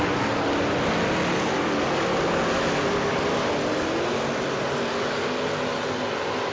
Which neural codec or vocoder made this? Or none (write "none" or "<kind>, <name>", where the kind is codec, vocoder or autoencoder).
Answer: none